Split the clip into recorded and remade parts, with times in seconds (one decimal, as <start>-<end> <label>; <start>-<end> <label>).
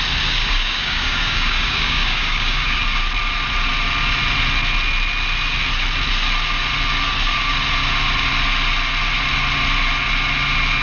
0.0-0.4 recorded; 0.4-2.8 remade; 2.8-10.8 recorded